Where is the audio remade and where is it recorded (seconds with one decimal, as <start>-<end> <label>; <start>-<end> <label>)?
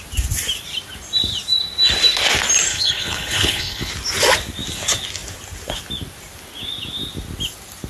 0.0-2.7 recorded; 2.7-3.9 remade; 3.9-7.9 recorded